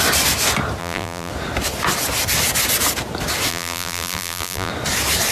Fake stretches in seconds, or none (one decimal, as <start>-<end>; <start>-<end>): 0.8-1.3; 3.5-4.7